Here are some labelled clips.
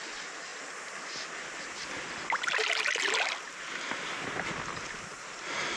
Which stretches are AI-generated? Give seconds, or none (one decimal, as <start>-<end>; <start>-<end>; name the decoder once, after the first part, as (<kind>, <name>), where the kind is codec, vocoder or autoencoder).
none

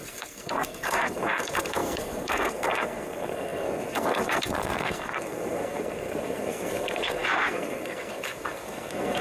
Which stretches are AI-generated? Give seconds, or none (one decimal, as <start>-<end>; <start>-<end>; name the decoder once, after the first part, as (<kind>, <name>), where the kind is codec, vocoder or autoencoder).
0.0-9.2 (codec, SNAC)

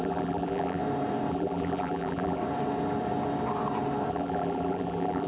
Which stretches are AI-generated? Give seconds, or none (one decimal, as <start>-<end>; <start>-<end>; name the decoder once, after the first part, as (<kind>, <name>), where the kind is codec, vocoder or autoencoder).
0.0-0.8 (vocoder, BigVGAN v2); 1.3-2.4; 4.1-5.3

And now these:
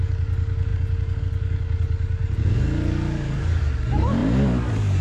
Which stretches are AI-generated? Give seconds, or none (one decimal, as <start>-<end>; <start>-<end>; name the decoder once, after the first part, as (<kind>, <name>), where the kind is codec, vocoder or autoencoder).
0.0-5.0 (codec, DAC)

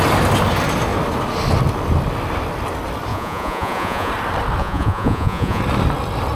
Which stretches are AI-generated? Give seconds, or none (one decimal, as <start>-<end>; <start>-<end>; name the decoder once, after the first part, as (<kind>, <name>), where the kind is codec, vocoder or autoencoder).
3.1-4.1 (vocoder, Vocos); 4.6-5.6

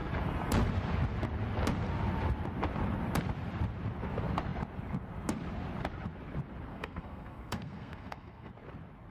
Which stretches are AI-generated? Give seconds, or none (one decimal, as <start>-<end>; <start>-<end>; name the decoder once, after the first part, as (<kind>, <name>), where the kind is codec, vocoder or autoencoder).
6.7-8.5 (codec, SNAC)

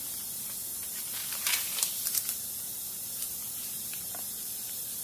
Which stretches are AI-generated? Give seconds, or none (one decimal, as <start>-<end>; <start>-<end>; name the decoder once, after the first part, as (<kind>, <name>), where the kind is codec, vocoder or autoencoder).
1.2-2.2 (vocoder, BigVGAN v2); 3.4-5.0